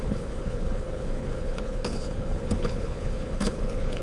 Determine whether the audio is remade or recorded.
remade